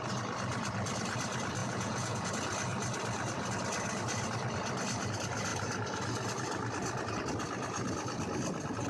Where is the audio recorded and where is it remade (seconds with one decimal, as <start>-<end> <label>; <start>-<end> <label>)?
0.0-1.6 recorded; 1.6-2.3 remade; 2.3-8.9 recorded